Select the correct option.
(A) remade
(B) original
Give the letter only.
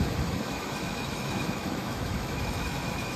A